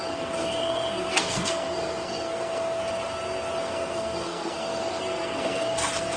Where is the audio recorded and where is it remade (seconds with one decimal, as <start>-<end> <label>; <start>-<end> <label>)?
0.0-2.8 remade; 2.8-3.6 recorded; 3.6-6.2 remade